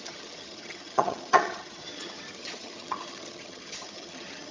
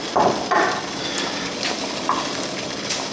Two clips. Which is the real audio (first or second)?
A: second